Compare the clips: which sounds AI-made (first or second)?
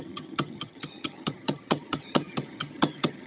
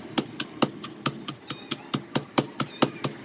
first